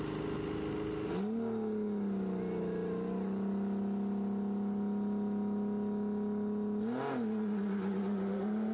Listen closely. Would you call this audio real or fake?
real